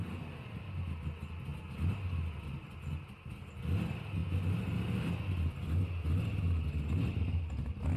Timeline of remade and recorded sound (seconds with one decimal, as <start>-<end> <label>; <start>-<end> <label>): 0.0-8.0 recorded